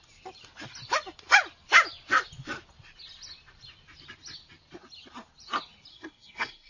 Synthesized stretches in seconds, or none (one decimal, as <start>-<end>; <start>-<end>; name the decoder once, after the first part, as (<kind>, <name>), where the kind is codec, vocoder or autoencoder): 5.9-6.7 (codec, SNAC)